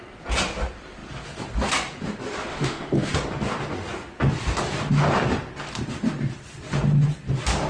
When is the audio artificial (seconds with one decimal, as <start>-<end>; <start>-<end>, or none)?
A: 2.5-3.1